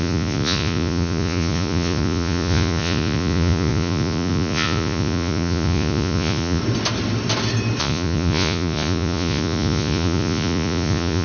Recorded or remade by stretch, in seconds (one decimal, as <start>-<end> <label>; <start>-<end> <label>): 0.0-6.6 remade; 6.6-7.8 recorded; 7.8-11.2 remade